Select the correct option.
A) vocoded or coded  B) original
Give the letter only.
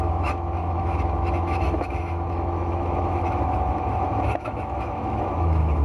A